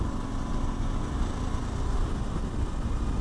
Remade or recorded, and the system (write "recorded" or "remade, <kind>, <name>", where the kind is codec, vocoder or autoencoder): recorded